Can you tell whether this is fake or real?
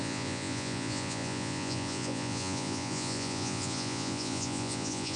fake